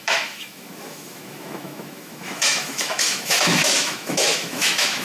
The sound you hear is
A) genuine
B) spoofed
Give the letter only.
B